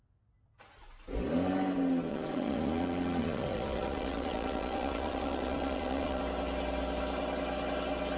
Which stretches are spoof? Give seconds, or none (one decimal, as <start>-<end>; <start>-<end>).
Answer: 2.1-6.2